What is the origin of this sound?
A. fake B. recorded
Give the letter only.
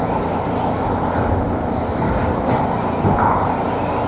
B